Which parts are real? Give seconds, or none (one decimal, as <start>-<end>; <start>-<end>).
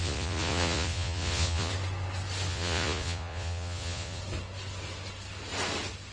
1.7-2.5; 4.2-6.1